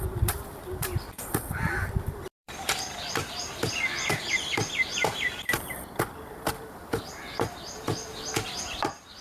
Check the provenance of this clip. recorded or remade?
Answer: remade